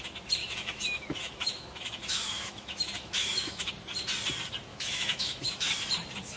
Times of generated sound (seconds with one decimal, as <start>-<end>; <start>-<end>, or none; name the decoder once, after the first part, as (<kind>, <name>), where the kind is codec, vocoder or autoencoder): 0.4-3.7 (autoencoder, DAC-VAE); 4.7-5.7